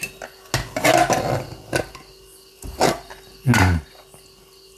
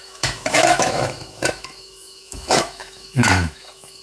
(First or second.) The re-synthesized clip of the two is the second